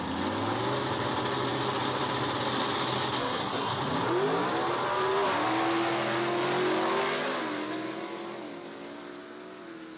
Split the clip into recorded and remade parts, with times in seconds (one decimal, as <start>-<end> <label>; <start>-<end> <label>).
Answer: 0.0-3.2 recorded; 3.2-3.8 remade; 3.8-10.0 recorded